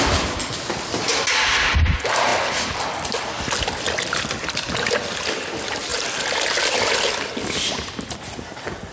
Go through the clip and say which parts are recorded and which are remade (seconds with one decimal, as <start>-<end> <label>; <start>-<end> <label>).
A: 0.0-8.9 recorded